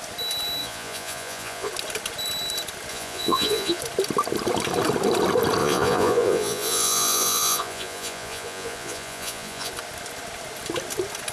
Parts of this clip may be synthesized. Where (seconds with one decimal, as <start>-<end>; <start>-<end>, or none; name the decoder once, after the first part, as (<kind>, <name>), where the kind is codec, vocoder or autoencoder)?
0.6-1.7 (vocoder, Vocos); 2.9-3.8; 5.6-9.7